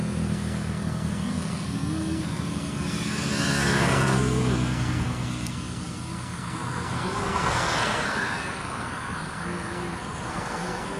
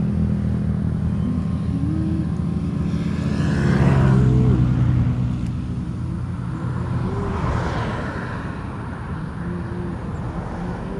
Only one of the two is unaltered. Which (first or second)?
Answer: second